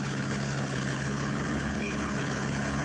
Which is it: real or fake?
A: fake